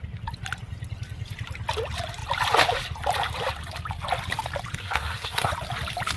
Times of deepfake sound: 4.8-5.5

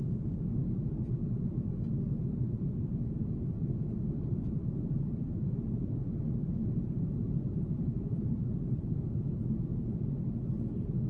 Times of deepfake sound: 6.6-8.7

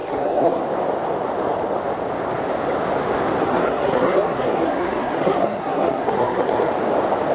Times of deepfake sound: 0.0-0.6; 3.5-6.7

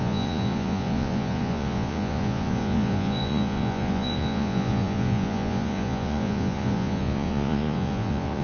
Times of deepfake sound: 0.0-8.4

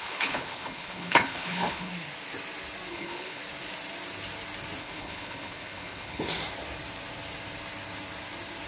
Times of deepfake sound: 0.0-1.9; 2.9-3.4; 4.8-6.4

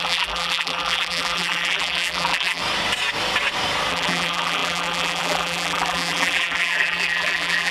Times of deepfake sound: 0.0-2.6; 3.9-7.7